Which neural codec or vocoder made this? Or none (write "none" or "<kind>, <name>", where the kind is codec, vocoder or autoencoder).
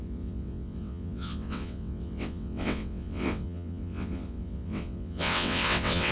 vocoder, WaveNeXt